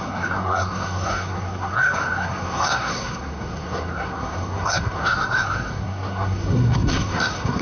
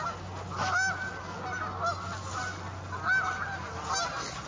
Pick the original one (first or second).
second